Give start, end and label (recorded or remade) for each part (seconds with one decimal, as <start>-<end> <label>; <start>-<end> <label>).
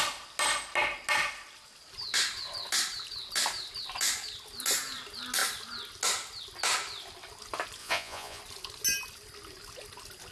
0.0-7.8 recorded; 7.8-8.4 remade; 8.4-10.3 recorded